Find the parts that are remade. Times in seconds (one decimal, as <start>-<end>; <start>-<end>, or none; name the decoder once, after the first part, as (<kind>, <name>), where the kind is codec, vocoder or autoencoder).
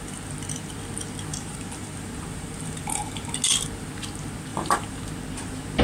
1.3-3.3 (vocoder, BigVGAN v2); 4.5-5.0